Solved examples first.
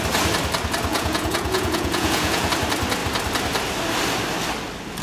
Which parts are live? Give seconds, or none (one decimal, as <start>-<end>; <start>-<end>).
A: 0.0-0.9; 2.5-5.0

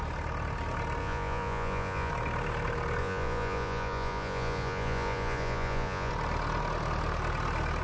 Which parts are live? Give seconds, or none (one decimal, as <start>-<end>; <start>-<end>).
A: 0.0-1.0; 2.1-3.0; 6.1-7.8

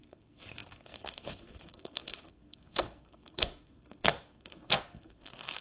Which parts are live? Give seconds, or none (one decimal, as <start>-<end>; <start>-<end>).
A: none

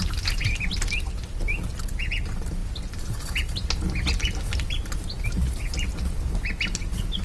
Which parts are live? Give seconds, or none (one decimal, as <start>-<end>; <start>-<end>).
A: 0.0-7.2